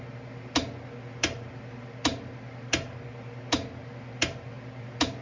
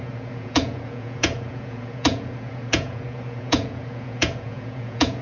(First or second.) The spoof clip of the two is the second